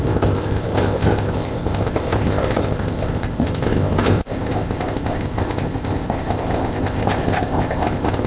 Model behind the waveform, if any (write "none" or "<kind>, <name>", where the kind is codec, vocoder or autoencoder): codec, ZipCodec